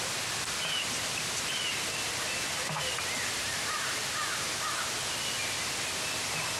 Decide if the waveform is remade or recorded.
recorded